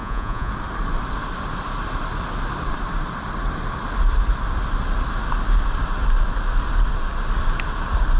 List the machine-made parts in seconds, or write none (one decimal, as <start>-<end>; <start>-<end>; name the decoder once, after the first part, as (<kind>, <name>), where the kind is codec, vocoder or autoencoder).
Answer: 0.0-0.5 (vocoder, Vocos)